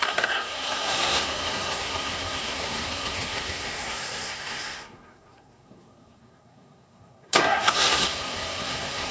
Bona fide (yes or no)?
no